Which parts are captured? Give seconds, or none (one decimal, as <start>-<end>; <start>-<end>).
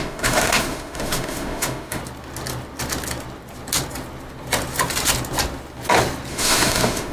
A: 2.0-6.3